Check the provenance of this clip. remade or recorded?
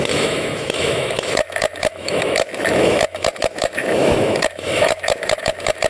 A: remade